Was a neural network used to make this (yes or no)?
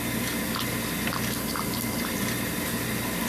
no